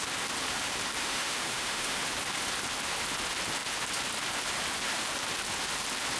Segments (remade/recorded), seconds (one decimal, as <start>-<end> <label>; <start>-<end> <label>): 0.0-1.0 recorded; 1.0-2.0 remade; 2.0-6.2 recorded